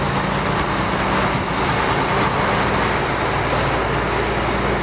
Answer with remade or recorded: recorded